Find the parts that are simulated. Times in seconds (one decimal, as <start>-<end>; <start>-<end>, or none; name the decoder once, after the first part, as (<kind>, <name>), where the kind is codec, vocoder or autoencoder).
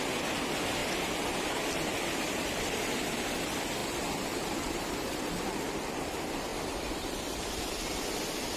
0.8-3.4 (vocoder, BigVGAN v2); 3.8-5.9; 6.5-7.6